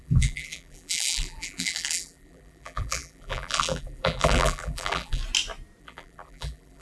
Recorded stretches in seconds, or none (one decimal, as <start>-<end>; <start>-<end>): 5.2-5.8